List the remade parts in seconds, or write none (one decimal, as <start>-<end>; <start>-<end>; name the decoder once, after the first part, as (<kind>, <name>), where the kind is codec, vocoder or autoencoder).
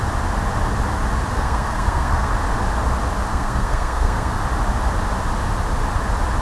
1.3-2.3 (codec, SNAC); 3.3-4.4